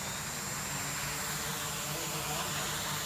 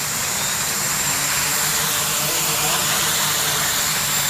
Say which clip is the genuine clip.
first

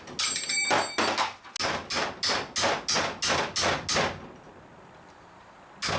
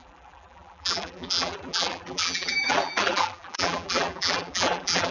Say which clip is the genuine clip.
first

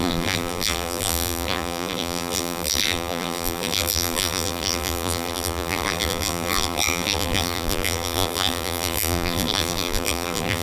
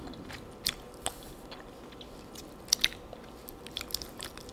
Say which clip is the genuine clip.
second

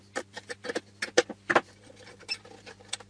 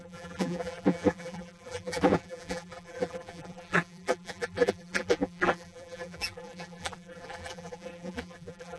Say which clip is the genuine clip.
first